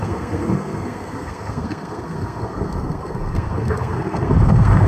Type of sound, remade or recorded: remade